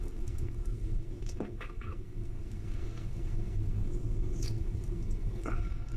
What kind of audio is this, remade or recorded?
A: remade